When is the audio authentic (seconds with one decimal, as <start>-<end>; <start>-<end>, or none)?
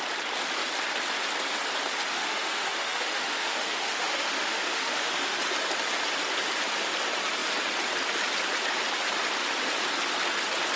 0.0-2.1; 5.4-10.8